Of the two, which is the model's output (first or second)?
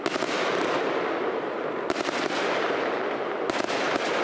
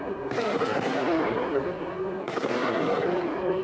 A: second